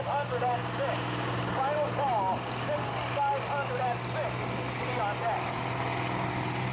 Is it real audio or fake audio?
real